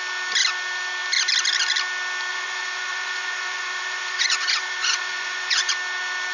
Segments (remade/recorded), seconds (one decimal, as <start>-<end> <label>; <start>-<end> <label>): 0.0-2.3 recorded; 2.3-5.7 remade; 5.7-6.3 recorded